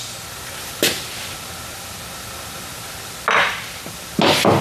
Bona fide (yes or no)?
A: yes